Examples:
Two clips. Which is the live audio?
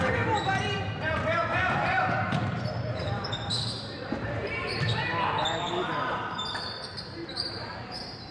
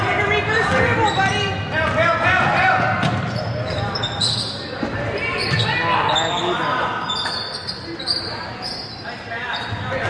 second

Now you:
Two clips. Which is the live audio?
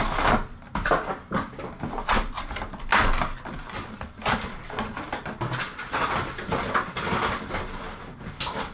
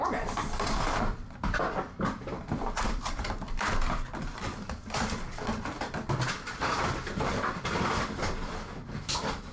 first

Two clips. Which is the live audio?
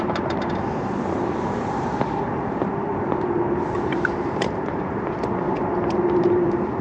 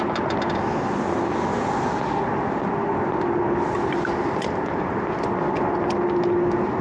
second